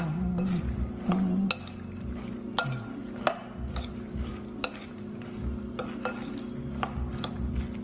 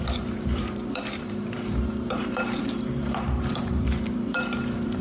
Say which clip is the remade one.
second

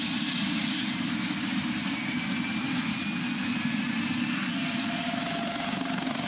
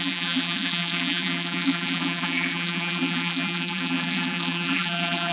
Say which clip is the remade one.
second